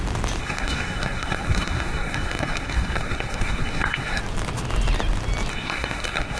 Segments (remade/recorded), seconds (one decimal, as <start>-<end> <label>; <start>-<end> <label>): 0.0-0.4 recorded; 0.4-4.2 remade; 4.2-5.5 recorded; 5.5-6.4 remade